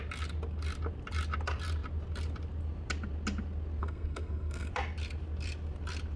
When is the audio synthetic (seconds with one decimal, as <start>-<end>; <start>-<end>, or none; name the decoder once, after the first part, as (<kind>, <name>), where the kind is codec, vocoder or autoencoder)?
3.8-4.7 (codec, SNAC)